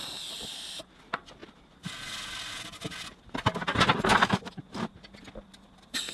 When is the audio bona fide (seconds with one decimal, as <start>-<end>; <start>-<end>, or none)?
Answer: 0.0-6.1